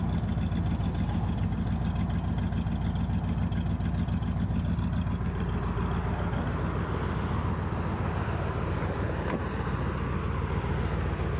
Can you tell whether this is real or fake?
real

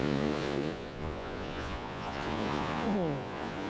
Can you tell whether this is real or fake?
fake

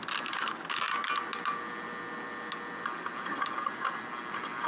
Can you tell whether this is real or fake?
real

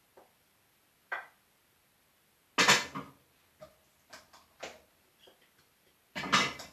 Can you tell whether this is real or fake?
real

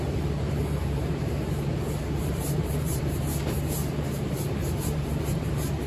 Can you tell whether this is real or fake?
fake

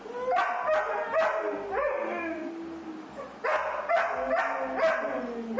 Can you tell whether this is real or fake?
real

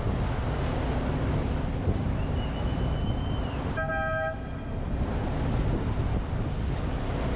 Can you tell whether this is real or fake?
real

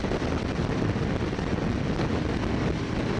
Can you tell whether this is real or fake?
real